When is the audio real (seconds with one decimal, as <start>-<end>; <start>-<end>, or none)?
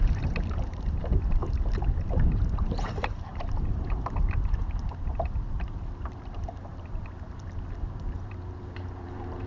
1.4-1.9